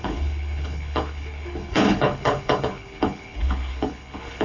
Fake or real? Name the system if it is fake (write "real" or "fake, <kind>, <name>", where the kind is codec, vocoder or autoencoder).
fake, codec, HILCodec